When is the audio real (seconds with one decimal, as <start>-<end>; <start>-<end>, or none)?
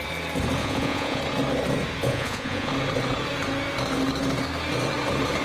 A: 0.0-0.6; 1.2-2.0; 2.7-5.4